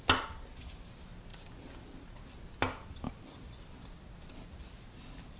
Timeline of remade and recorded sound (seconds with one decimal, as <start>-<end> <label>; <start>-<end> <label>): 0.0-5.4 recorded